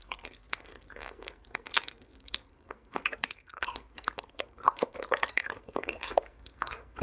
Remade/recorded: remade